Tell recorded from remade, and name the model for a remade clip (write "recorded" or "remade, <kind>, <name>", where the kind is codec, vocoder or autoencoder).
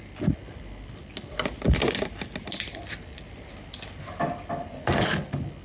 recorded